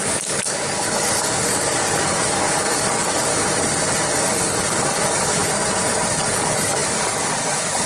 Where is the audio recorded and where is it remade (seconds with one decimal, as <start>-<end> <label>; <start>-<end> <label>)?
0.0-3.3 remade; 3.3-4.2 recorded; 4.2-5.4 remade; 5.4-6.3 recorded; 6.3-7.9 remade